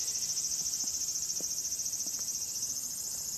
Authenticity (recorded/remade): remade